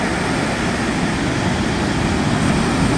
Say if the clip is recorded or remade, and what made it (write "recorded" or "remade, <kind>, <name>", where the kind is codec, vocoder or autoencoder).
recorded